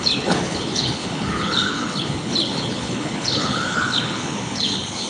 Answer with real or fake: fake